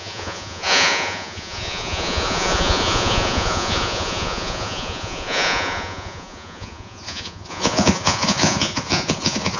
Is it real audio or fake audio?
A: fake